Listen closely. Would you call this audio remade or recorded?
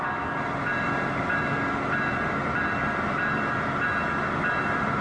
recorded